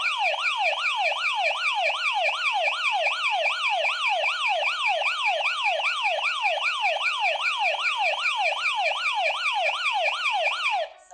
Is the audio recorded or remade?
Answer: recorded